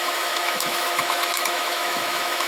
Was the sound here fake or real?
fake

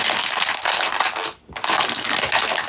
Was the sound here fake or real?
real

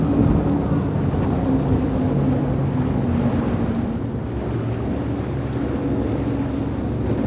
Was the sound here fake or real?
real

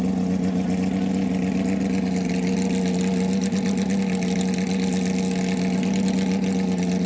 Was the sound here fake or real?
real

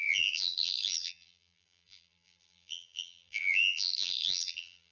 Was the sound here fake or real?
fake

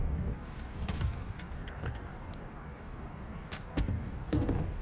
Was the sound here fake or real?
fake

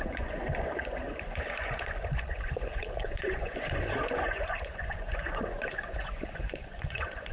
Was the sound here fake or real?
fake